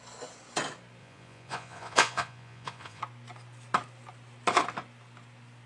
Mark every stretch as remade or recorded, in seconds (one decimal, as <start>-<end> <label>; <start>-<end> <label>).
0.0-1.0 recorded; 1.0-3.0 remade; 3.0-5.7 recorded